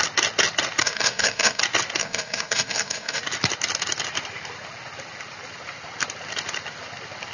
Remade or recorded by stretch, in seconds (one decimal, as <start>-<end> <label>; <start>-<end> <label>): 0.0-0.8 recorded; 0.8-1.6 remade; 1.6-2.0 recorded; 2.0-3.2 remade; 3.2-7.3 recorded